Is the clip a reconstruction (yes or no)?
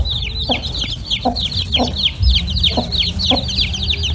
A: no